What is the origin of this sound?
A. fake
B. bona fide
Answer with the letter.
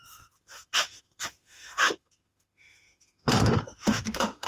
A